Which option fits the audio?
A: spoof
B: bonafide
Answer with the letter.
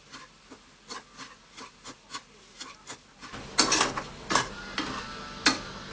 B